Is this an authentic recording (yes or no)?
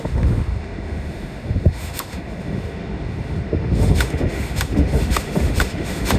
no